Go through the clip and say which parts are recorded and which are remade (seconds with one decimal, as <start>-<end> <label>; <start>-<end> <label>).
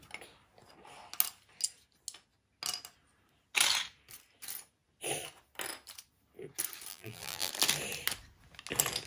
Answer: 0.0-6.9 recorded; 6.9-7.5 remade; 7.5-9.1 recorded